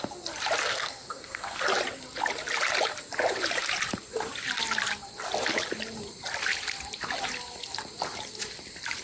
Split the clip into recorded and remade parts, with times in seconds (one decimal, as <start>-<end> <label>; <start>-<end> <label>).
0.0-0.6 recorded; 0.6-1.6 remade; 1.6-9.0 recorded